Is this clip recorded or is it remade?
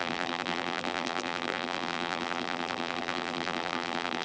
remade